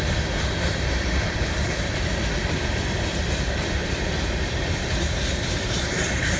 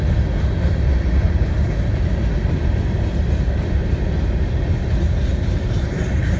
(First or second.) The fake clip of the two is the first